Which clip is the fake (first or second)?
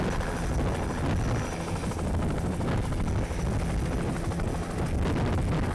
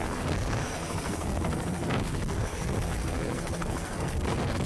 second